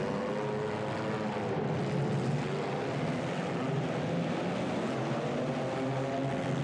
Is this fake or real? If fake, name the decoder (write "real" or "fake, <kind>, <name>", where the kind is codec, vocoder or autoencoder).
real